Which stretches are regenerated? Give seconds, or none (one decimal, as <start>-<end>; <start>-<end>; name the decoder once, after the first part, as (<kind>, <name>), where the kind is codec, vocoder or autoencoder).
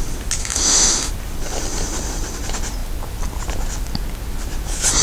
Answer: 0.4-1.1 (autoencoder, DAC-VAE)